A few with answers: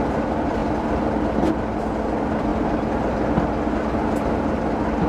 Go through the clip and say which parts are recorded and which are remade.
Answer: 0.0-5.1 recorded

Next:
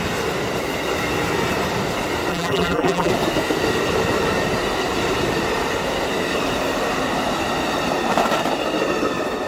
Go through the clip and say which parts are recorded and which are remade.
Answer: 0.0-2.3 recorded; 2.3-3.1 remade; 3.1-9.5 recorded

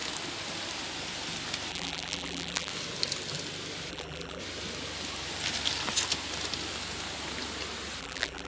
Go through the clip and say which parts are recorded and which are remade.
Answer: 0.0-1.7 recorded; 1.7-2.7 remade; 2.7-3.9 recorded; 3.9-4.4 remade; 4.4-8.0 recorded; 8.0-8.5 remade

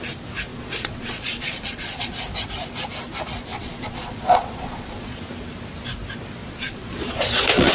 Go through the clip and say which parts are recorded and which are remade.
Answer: 0.0-0.5 recorded; 0.5-2.1 remade; 2.1-3.5 recorded; 3.5-5.2 remade; 5.2-6.4 recorded; 6.4-7.7 remade

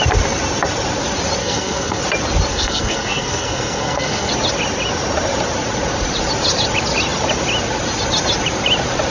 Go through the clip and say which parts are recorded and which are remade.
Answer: 0.0-1.4 recorded; 1.4-2.0 remade; 2.0-2.5 recorded; 2.5-4.3 remade; 4.3-9.1 recorded

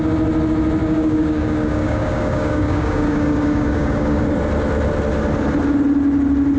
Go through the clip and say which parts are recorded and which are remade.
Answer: 0.0-0.8 recorded; 0.8-4.2 remade; 4.2-6.6 recorded